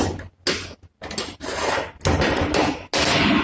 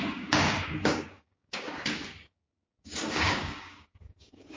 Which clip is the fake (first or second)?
second